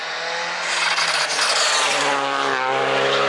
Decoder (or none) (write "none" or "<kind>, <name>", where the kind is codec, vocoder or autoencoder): none